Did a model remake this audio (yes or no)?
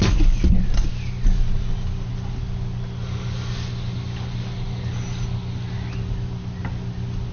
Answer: no